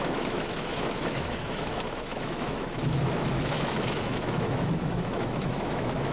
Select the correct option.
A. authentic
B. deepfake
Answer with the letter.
B